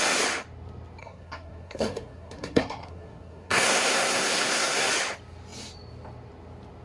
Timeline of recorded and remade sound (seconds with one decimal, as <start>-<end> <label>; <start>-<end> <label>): 0.0-1.0 recorded; 1.0-4.9 remade; 4.9-6.8 recorded